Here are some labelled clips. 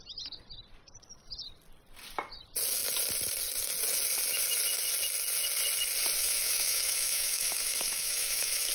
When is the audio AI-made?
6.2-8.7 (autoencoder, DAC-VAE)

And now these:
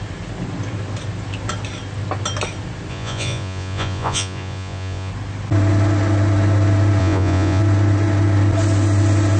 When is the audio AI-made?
2.9-5.1 (vocoder, Vocos); 7.0-7.6

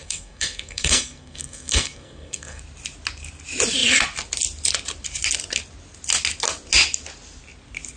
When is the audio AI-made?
0.0-2.6 (codec, SNAC)

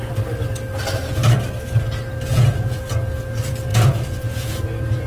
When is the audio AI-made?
2.3-2.8 (vocoder, Vocos); 3.7-5.1

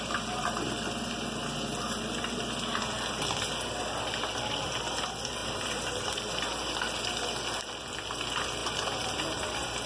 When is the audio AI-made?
5.4-6.7 (vocoder, BigVGAN v2); 8.6-9.4

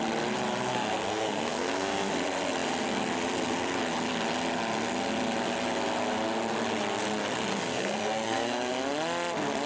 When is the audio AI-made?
0.7-2.1 (codec, SNAC); 7.5-8.7

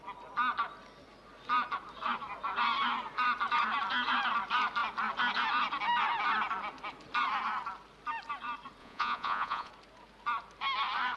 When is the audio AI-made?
8.8-9.7 (vocoder, Vocos)

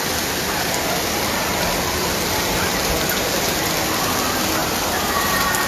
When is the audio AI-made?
4.6-5.3 (vocoder, BigVGAN v2)